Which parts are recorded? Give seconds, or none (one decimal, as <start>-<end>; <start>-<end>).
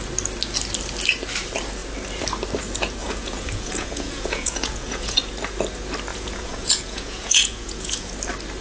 0.0-3.0; 5.2-6.1; 8.1-8.6